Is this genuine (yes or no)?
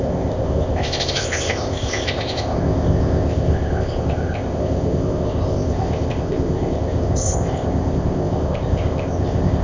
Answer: no